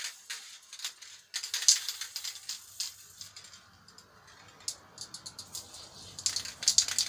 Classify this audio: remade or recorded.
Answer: recorded